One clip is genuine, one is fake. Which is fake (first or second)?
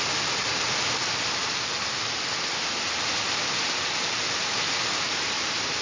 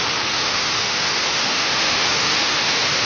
second